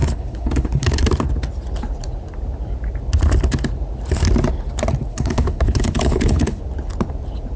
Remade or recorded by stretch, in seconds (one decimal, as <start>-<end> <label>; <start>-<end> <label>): 0.0-1.0 remade; 1.0-5.1 recorded; 5.1-6.6 remade; 6.6-7.6 recorded